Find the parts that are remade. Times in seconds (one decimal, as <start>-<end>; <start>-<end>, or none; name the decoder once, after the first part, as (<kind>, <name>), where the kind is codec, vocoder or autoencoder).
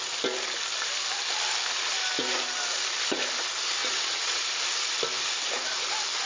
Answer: 3.8-4.4 (vocoder, WaveNeXt)